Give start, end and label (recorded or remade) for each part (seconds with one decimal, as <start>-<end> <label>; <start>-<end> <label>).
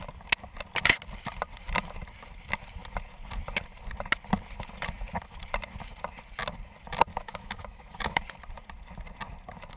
0.0-7.1 recorded; 7.1-8.2 remade; 8.2-9.8 recorded